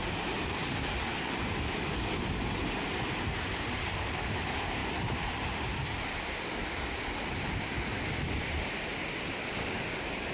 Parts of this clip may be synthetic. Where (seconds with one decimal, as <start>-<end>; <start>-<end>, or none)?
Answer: none